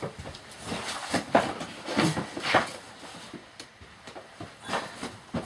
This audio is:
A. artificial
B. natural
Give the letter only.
B